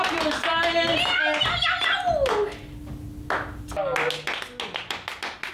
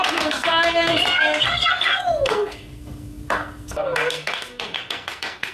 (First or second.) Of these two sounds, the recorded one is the first